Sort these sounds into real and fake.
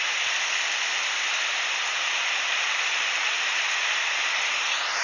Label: real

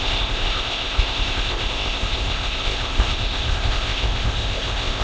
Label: fake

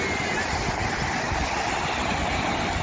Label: real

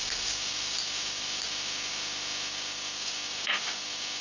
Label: real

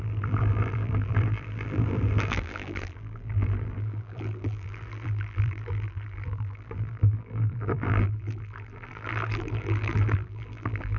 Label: fake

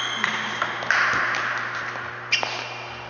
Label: real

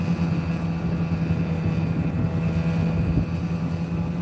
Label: real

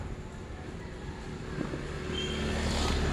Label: real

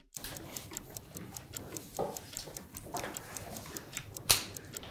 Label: fake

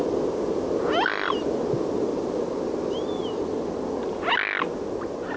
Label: real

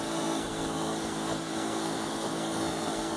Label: fake